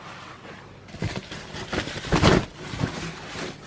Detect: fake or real fake